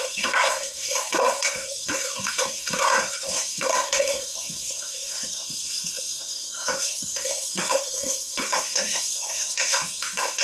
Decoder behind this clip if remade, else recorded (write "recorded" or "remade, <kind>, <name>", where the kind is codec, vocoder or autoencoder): remade, codec, SNAC